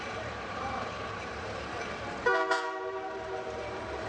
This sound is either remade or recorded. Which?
remade